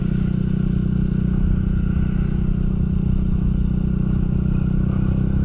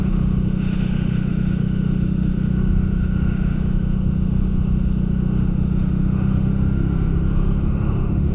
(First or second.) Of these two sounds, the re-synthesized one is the second